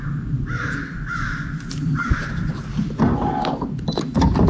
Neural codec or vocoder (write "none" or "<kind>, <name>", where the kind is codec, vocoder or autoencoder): none